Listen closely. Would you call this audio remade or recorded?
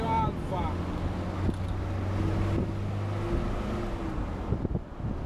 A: recorded